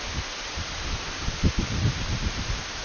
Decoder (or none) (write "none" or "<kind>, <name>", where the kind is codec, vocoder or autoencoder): none